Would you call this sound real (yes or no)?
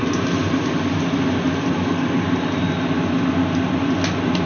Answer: yes